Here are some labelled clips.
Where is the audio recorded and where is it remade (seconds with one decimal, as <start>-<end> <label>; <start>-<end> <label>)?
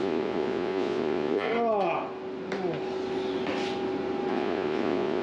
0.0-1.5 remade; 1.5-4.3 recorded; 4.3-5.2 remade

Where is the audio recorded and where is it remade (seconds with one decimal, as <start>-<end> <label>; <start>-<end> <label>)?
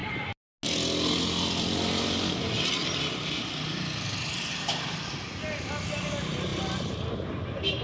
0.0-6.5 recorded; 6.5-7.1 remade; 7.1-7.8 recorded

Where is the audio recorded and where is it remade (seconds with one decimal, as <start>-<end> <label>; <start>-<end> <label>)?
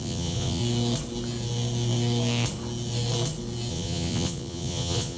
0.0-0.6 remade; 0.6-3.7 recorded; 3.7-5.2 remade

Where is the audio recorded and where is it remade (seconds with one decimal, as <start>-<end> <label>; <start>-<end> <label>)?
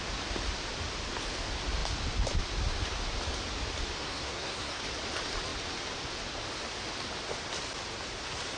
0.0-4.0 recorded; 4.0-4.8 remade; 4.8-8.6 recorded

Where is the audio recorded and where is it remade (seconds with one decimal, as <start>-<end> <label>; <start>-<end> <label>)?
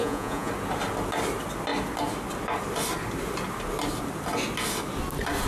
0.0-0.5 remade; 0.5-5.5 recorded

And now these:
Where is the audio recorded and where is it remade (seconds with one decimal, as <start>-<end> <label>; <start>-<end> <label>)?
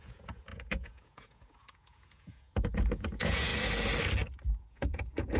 0.0-3.5 remade; 3.5-4.6 recorded; 4.6-5.4 remade